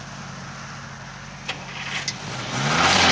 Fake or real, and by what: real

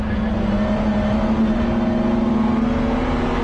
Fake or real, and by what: real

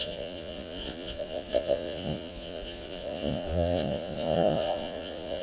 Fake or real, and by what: fake, vocoder, Vocos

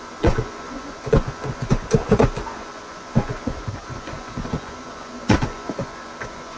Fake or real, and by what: fake, vocoder, Vocos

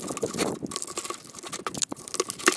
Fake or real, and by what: real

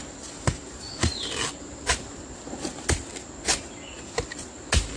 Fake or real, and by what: real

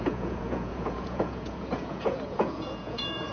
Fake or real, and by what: fake, vocoder, Vocos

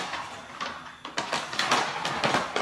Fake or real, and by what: real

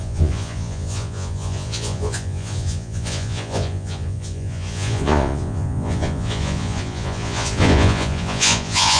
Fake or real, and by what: fake, vocoder, Vocos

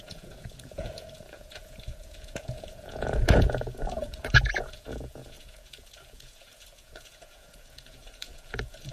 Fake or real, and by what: fake, vocoder, Vocos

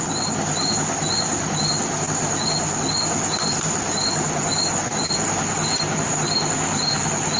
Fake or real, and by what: real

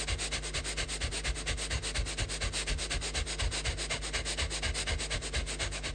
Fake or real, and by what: real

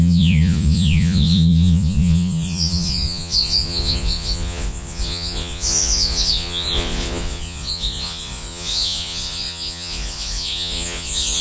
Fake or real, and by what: fake, vocoder, Vocos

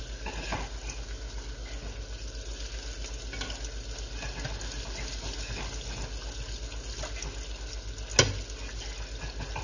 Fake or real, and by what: real